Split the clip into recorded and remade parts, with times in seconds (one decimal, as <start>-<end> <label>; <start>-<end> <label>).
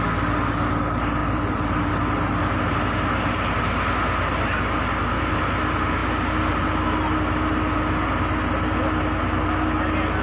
0.0-1.2 recorded; 1.2-1.8 remade; 1.8-10.2 recorded